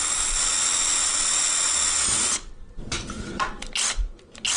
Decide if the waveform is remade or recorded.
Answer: recorded